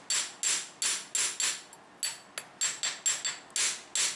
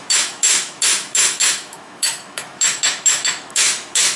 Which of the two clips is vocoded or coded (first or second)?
second